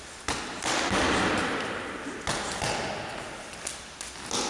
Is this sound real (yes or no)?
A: yes